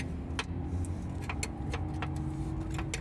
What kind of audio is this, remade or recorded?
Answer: recorded